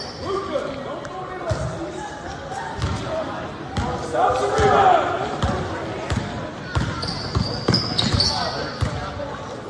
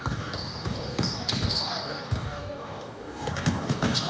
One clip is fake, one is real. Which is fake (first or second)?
second